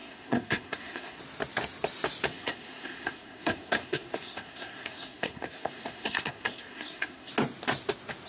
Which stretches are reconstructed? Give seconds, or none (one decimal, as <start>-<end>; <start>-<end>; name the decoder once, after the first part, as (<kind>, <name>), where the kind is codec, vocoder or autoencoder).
0.0-1.2 (codec, SNAC); 2.3-7.3